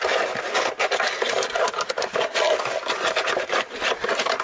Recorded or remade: recorded